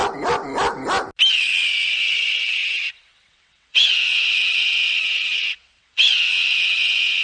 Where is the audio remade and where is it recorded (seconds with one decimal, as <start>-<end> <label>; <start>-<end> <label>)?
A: 0.0-1.3 recorded; 1.3-2.6 remade; 2.6-3.3 recorded; 3.3-7.2 remade